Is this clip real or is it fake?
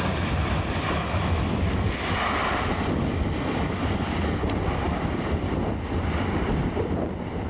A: real